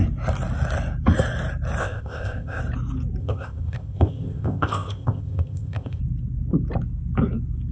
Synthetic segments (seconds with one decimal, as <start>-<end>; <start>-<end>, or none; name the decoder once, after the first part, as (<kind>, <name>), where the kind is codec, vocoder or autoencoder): 1.8-2.6 (codec, ZipCodec); 3.2-6.0